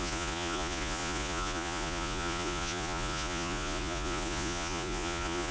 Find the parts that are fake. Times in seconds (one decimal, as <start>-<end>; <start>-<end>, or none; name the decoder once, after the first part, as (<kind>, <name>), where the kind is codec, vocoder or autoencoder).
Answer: 0.0-5.5 (vocoder, Vocos)